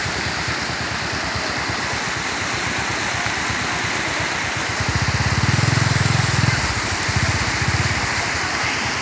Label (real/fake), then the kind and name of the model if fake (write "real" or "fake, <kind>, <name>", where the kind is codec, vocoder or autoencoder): real